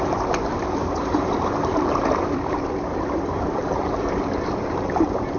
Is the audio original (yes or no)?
no